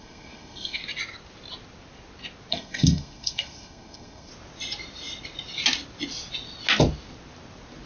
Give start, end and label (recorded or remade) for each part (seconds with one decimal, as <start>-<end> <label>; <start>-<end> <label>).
0.0-0.8 remade; 0.8-2.5 recorded; 2.5-4.3 remade; 4.3-7.9 recorded